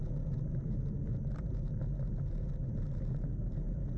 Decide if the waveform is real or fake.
real